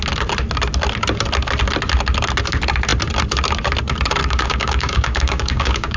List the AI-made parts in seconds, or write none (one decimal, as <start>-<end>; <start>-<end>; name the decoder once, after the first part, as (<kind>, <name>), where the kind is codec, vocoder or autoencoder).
4.2-6.0 (codec, DAC)